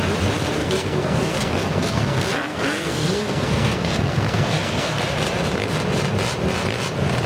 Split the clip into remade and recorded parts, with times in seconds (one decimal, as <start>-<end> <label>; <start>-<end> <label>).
0.0-0.6 recorded; 0.6-5.0 remade; 5.0-7.3 recorded